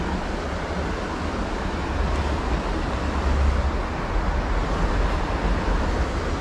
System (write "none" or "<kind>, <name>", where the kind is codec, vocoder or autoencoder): none